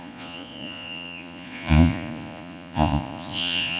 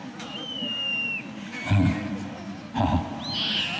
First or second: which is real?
second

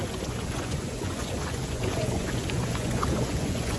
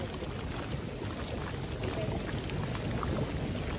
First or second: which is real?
second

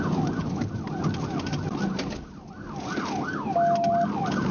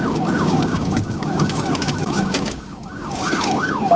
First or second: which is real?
first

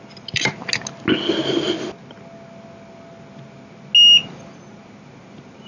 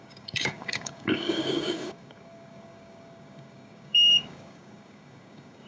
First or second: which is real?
first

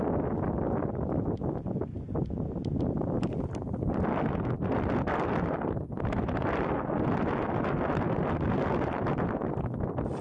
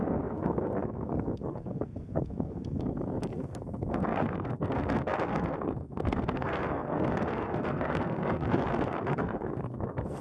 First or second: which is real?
first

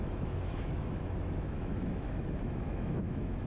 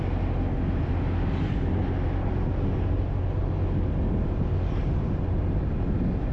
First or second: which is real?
second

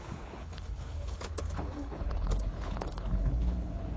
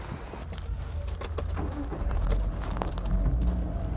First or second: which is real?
second